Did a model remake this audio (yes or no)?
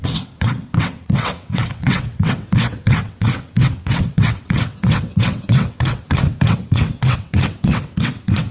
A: yes